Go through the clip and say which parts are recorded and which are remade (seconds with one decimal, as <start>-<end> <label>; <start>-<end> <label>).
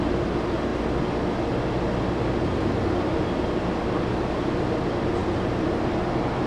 0.0-6.5 recorded